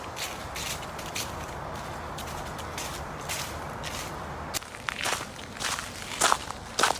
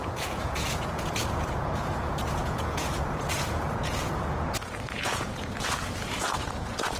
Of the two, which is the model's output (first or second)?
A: second